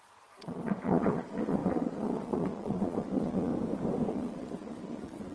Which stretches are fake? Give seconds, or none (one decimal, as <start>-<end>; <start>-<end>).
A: 0.0-3.5; 4.1-5.3